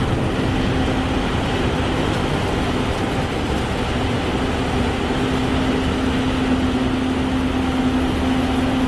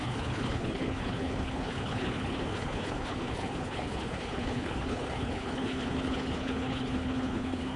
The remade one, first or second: second